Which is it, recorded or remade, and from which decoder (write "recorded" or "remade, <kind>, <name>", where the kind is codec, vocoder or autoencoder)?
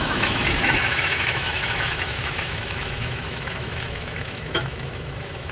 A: remade, autoencoder, DAC-VAE